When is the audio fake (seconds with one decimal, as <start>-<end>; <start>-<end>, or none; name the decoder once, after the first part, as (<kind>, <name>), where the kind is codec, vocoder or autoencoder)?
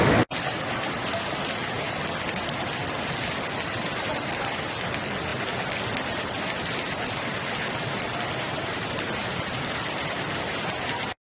none